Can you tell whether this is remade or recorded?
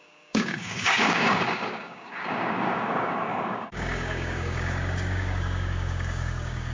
remade